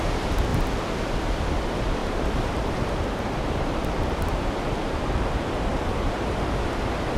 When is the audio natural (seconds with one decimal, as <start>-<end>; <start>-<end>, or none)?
0.0-0.5; 1.1-2.0; 3.8-5.7; 6.6-7.2